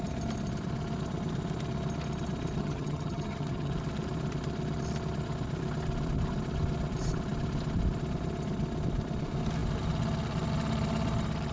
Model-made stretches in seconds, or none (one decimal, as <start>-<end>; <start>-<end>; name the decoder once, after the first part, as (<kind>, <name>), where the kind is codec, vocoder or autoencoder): 2.6-3.7 (vocoder, HiFi-GAN)